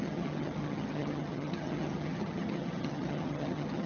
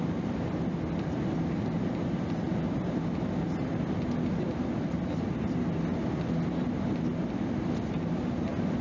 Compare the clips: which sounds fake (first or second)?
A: first